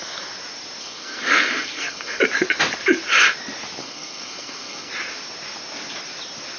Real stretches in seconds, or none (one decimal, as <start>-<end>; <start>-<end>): 0.0-0.8; 2.2-3.8; 4.9-6.6